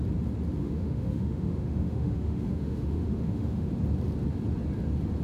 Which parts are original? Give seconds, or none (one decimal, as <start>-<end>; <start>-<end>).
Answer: 0.0-0.6; 3.7-5.2